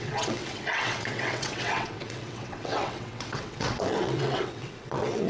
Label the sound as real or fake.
fake